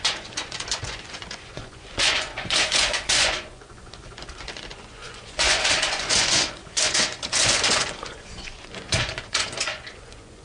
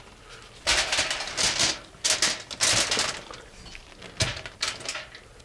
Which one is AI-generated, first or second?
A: first